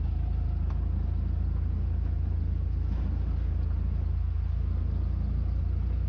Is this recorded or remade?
recorded